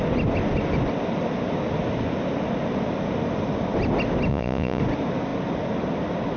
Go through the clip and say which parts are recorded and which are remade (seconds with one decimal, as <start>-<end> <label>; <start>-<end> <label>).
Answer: 0.0-4.3 recorded; 4.3-4.8 remade; 4.8-6.4 recorded

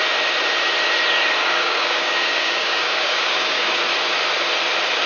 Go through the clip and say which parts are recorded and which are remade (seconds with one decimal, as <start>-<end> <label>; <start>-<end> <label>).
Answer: 0.0-1.4 recorded; 1.4-3.8 remade; 3.8-5.1 recorded

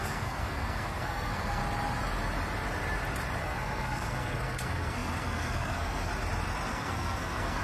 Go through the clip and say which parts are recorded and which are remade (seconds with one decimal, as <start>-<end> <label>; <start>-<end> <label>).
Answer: 0.0-1.6 remade; 1.6-3.4 recorded; 3.4-6.1 remade; 6.1-6.7 recorded; 6.7-7.6 remade